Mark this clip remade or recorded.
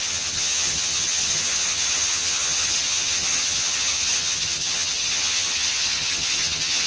remade